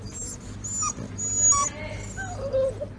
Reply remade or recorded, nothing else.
recorded